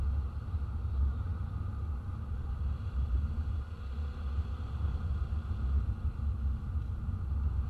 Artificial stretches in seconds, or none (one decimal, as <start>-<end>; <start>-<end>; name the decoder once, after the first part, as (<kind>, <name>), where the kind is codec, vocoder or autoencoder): 1.3-5.1 (vocoder, BigVGAN v2)